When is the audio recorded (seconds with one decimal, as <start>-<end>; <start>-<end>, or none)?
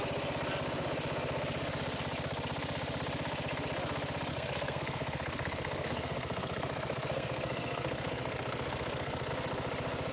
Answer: 0.0-4.3; 9.3-10.1